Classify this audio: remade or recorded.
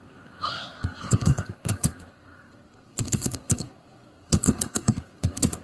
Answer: remade